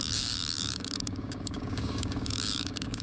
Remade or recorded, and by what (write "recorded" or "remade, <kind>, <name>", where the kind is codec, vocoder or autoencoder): remade, codec, DAC